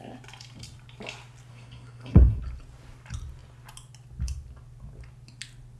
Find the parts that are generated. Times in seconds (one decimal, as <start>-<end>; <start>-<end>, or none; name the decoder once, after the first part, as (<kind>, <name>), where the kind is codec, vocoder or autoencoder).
1.5-2.4 (codec, SNAC)